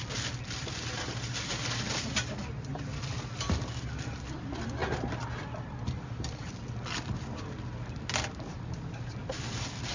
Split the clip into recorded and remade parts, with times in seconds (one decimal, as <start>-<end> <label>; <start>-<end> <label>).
0.0-9.9 recorded